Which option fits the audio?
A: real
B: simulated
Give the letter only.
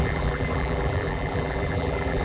B